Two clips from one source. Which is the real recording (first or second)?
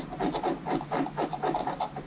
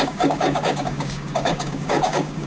first